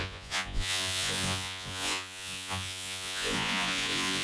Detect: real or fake fake